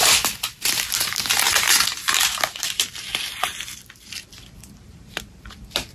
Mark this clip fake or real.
fake